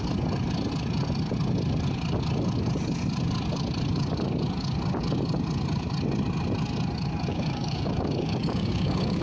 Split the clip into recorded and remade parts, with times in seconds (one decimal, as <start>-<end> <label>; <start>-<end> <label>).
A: 0.0-7.3 recorded; 7.3-9.2 remade